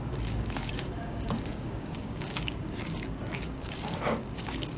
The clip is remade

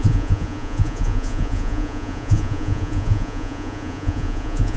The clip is remade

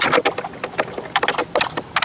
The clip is recorded